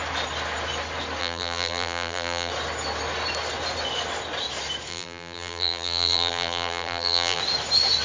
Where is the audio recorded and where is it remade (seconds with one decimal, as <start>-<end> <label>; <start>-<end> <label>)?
0.0-1.2 recorded; 1.2-2.5 remade; 2.5-4.9 recorded; 4.9-7.4 remade; 7.4-8.0 recorded